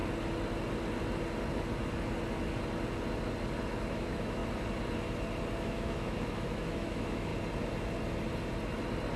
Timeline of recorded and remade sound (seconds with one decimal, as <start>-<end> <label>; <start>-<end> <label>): 0.0-3.9 recorded; 3.9-4.4 remade; 4.4-5.6 recorded; 5.6-7.3 remade; 7.3-9.2 recorded